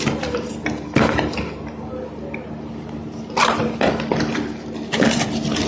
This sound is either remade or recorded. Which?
remade